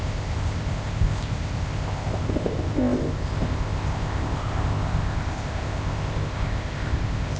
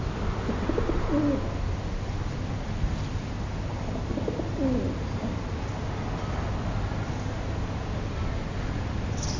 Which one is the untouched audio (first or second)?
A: second